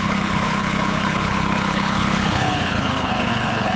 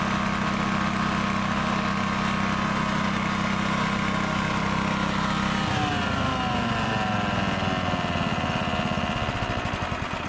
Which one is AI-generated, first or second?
first